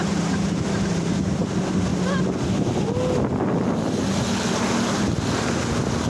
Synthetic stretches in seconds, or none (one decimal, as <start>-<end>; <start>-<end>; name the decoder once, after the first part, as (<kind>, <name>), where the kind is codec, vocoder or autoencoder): none